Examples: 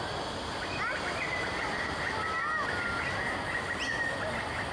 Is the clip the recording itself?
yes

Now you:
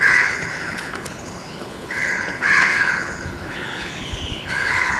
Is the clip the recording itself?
no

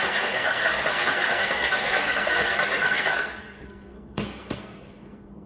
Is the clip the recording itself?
no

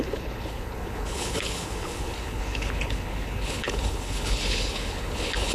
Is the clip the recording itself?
no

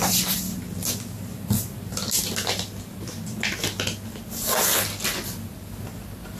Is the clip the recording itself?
yes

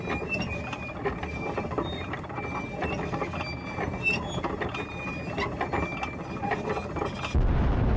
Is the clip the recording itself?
yes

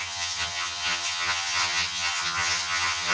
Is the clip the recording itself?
no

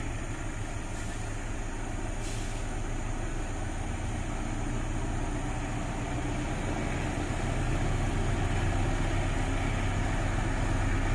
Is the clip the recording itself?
yes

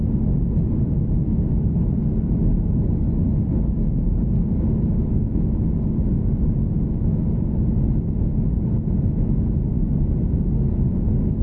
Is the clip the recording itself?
yes